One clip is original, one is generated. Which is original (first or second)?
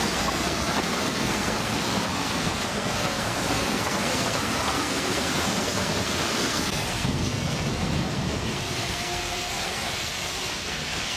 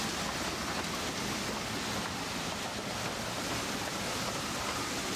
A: second